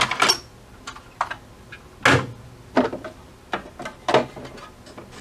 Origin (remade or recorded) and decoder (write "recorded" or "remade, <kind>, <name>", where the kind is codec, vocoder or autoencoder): recorded